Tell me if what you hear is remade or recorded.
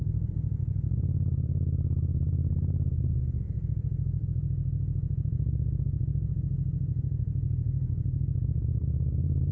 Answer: remade